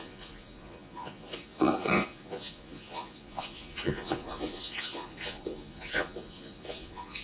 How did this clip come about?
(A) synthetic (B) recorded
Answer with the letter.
A